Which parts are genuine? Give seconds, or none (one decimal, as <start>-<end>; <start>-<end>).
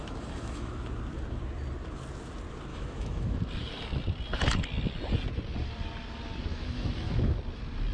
0.7-2.7; 3.4-6.5; 7.4-7.9